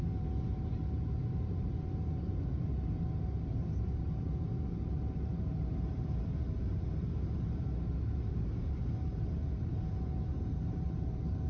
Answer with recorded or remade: remade